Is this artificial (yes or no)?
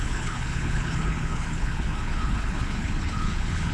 yes